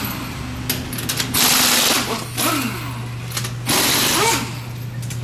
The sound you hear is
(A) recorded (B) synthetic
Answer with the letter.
A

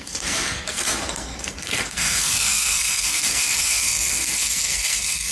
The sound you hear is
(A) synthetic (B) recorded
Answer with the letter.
A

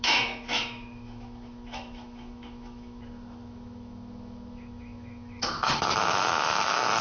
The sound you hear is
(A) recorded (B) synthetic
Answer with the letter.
B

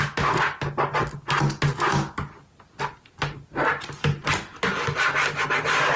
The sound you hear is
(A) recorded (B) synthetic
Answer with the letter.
A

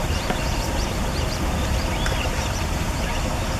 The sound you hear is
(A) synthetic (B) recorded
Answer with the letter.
A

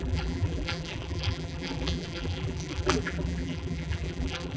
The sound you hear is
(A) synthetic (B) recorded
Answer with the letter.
A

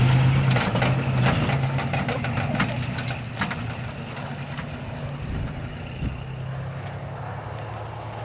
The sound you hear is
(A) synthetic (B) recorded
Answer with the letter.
B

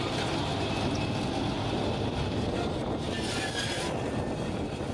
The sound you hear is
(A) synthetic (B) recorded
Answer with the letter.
B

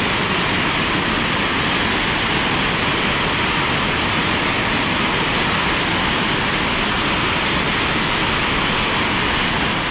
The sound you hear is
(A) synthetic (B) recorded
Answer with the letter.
B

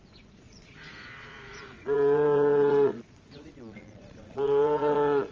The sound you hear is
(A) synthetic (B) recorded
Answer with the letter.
A